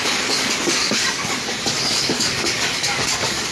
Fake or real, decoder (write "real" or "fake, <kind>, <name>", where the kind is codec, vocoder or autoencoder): fake, codec, DAC